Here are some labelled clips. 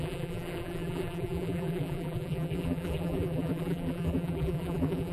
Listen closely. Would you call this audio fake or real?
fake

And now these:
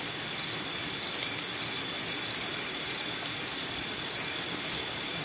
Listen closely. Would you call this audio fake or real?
real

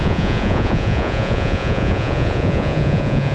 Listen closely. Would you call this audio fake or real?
fake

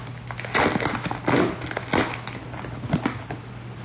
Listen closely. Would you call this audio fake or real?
real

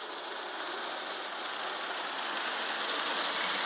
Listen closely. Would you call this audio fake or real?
real